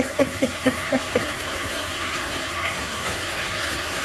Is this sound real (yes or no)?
no